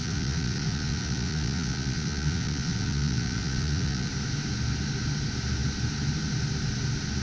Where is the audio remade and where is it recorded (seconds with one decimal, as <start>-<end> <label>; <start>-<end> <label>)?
0.0-4.1 remade; 4.1-7.2 recorded